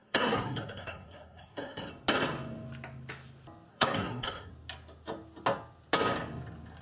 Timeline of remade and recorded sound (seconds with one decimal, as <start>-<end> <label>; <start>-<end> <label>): 0.0-1.9 remade; 1.9-3.7 recorded; 3.7-4.5 remade; 4.5-6.8 recorded